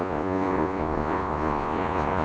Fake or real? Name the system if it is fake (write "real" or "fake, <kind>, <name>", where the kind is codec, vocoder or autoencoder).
fake, vocoder, Vocos